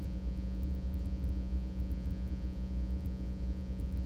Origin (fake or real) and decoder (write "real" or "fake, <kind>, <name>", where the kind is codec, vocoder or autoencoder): fake, vocoder, Vocos